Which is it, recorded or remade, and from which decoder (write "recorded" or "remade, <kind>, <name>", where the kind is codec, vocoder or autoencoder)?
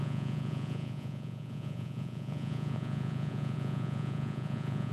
remade, vocoder, Vocos